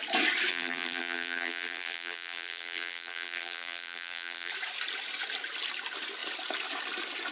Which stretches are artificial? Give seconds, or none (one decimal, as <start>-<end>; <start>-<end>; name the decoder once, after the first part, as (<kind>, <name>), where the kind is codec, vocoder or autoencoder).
0.5-4.5 (vocoder, BigVGAN v2)